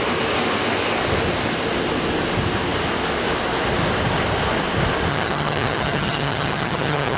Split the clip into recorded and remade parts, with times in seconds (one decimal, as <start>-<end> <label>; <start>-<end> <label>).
0.0-5.1 recorded; 5.1-7.2 remade